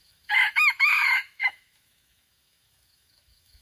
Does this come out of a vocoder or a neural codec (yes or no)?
yes